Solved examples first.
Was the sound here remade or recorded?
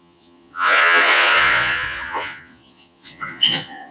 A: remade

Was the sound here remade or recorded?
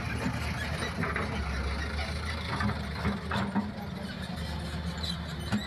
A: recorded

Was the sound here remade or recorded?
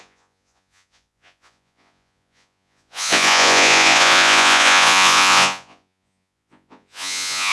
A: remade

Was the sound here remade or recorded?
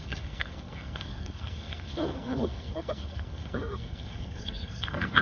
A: remade